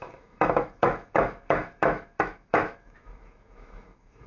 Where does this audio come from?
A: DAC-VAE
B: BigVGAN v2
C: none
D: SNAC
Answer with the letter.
A